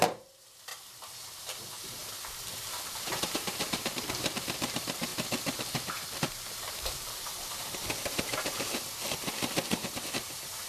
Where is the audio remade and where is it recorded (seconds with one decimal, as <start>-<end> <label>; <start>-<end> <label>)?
0.0-0.7 remade; 0.7-1.4 recorded; 1.4-2.0 remade; 2.0-2.5 recorded; 2.5-5.1 remade; 5.1-6.3 recorded; 6.3-9.0 remade; 9.0-9.7 recorded; 9.7-10.7 remade